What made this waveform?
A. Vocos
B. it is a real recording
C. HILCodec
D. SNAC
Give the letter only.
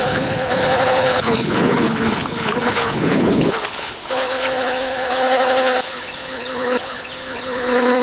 C